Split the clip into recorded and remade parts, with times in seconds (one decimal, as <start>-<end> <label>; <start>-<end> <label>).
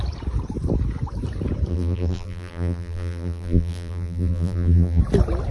0.0-1.7 recorded; 1.7-5.0 remade; 5.0-5.5 recorded